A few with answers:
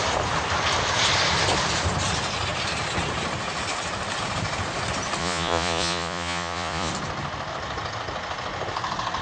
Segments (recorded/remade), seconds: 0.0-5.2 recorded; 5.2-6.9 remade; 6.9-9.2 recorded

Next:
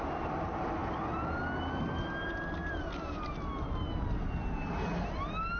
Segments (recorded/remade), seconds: 0.0-5.6 recorded

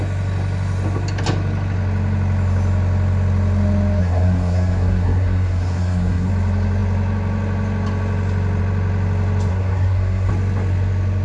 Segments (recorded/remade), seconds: 0.0-4.0 recorded; 4.0-6.3 remade; 6.3-9.5 recorded; 9.5-10.3 remade; 10.3-11.2 recorded

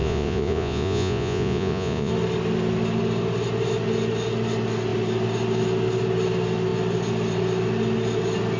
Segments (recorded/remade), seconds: 0.0-2.1 remade; 2.1-8.6 recorded

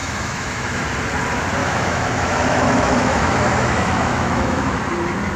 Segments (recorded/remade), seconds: 0.0-0.8 remade; 0.8-1.6 recorded; 1.6-4.8 remade; 4.8-5.4 recorded

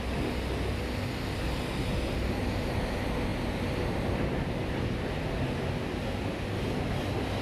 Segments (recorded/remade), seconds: 0.0-7.4 recorded

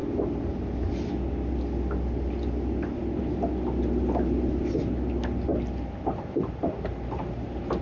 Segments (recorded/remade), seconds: 0.0-7.8 recorded